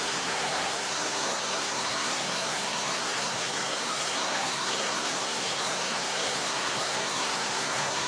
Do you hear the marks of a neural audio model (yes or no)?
yes